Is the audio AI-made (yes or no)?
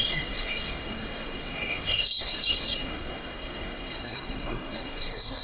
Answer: yes